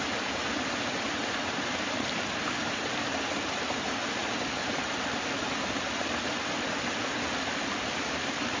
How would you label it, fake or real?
real